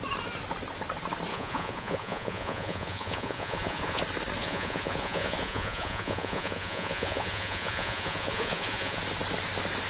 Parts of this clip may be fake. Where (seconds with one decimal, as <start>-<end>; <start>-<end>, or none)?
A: 1.3-4.0; 4.4-9.0